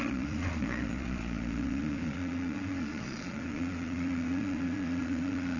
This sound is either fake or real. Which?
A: fake